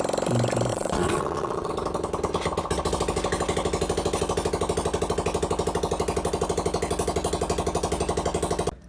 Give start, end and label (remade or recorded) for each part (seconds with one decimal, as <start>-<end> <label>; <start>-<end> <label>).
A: 0.0-0.7 recorded; 0.7-1.7 remade; 1.7-8.9 recorded